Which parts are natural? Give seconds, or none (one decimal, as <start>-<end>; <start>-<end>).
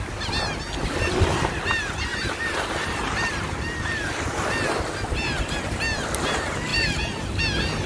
0.0-6.7; 7.4-7.9